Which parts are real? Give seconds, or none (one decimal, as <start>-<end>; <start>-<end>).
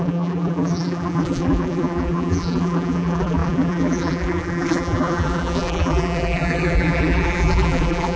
none